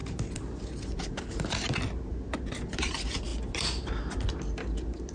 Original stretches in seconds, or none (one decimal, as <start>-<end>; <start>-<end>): 0.0-5.1